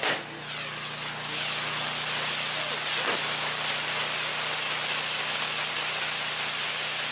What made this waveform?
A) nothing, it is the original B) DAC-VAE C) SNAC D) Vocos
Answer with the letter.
A